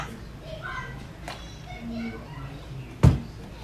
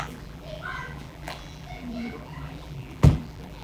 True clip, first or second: first